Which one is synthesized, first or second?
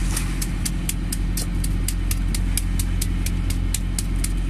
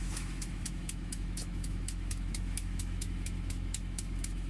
second